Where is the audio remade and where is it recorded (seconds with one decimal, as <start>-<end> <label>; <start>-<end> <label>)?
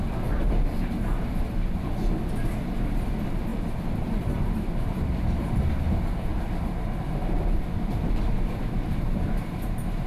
0.0-3.5 recorded; 3.5-4.8 remade; 4.8-6.3 recorded; 6.3-7.6 remade; 7.6-10.1 recorded